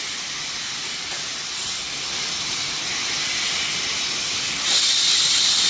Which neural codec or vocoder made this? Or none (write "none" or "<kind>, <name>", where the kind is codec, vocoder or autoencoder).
none